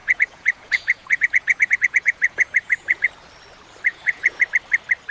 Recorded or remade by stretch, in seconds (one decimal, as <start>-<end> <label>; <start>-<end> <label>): 0.0-3.1 remade; 3.1-3.9 recorded; 3.9-4.4 remade; 4.4-5.1 recorded